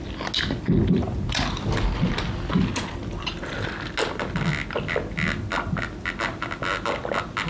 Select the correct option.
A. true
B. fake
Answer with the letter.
A